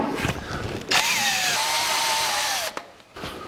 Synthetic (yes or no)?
no